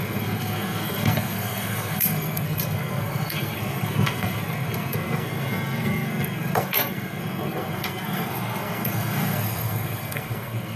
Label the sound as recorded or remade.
remade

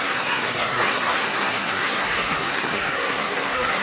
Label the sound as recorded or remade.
remade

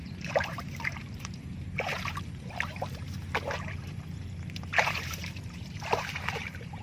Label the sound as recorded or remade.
remade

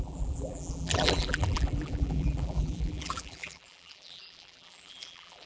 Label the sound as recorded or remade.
remade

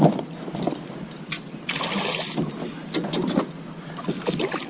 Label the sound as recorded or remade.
recorded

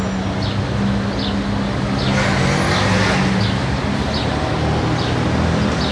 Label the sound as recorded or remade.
recorded